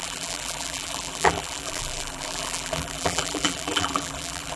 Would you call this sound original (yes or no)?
no